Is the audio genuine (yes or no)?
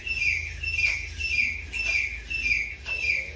yes